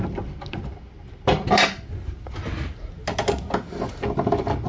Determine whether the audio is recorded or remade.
recorded